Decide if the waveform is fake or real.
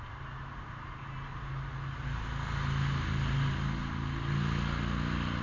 real